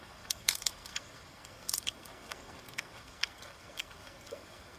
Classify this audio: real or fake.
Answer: fake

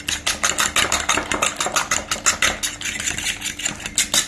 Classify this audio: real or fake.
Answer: real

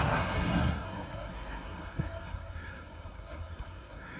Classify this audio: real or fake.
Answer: fake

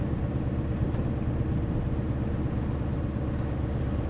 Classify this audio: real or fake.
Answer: real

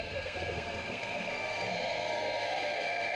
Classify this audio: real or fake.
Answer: fake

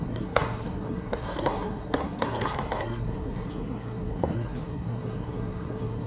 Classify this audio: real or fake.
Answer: fake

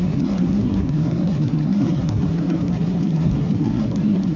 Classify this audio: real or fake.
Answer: fake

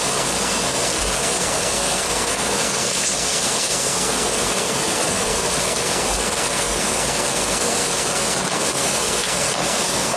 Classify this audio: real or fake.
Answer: fake